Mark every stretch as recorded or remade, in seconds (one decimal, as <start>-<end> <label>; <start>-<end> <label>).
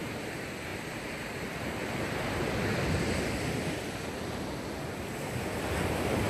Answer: 0.0-6.3 recorded